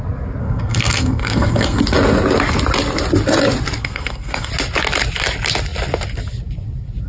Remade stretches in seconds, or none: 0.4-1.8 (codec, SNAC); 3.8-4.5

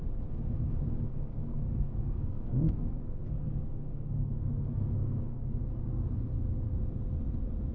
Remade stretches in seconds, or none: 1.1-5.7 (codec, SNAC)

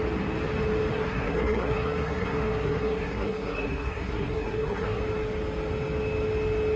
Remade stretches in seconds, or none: 0.9-5.0 (codec, SNAC)